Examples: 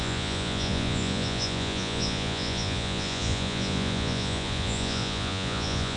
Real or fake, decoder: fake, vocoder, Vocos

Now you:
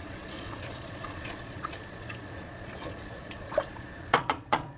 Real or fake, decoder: fake, vocoder, Vocos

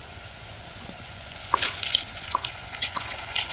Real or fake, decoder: fake, vocoder, Vocos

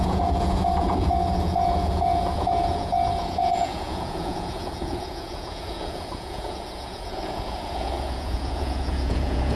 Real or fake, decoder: fake, vocoder, Vocos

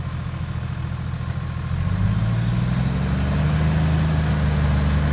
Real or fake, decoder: real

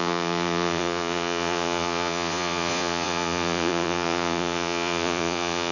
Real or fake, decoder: fake, vocoder, Vocos